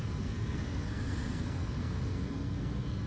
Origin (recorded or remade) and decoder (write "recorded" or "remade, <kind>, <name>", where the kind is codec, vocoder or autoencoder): remade, codec, SNAC